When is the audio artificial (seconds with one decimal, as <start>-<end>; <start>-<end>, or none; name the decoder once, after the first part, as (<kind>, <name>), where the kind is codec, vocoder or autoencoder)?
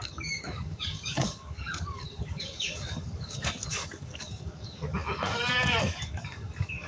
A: 0.0-6.9 (codec, DAC)